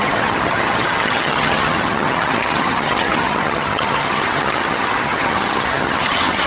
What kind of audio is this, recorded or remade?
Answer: remade